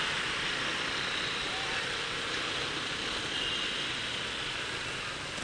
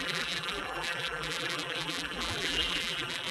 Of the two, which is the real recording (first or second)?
first